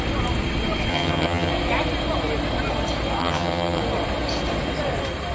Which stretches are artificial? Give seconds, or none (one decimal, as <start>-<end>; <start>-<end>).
0.9-1.5; 3.2-3.8